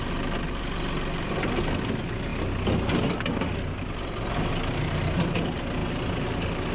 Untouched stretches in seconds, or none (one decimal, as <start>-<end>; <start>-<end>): 0.0-6.7